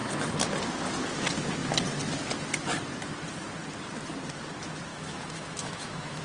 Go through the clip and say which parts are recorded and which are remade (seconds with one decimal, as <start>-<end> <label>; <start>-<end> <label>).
0.0-4.9 recorded; 4.9-6.2 remade